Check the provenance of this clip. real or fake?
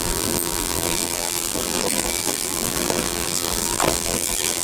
fake